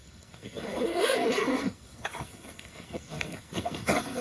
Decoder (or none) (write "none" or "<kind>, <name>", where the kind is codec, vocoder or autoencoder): codec, SNAC